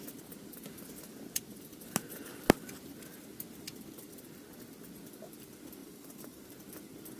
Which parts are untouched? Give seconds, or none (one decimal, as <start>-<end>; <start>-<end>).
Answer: 0.0-5.8; 6.5-7.2